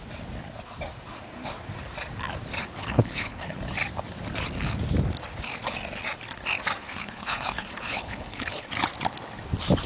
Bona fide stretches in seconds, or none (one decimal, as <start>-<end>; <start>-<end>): 0.0-2.6; 3.6-6.8; 8.7-9.9